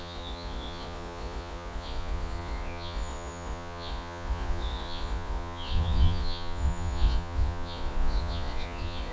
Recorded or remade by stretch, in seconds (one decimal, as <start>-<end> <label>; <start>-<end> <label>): 0.0-9.1 remade